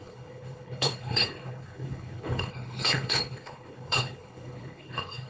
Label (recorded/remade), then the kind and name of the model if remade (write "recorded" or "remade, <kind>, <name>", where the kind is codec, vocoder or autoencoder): remade, codec, HILCodec